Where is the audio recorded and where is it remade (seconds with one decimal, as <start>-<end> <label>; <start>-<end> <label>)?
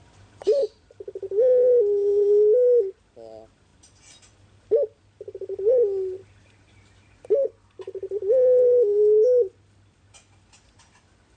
0.0-11.4 recorded